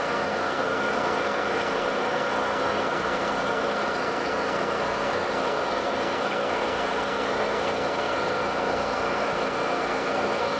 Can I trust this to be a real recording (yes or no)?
no